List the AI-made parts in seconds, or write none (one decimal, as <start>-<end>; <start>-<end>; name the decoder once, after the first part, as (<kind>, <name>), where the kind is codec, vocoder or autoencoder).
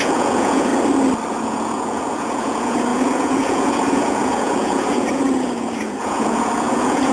0.0-0.7 (vocoder, Vocos); 1.3-7.1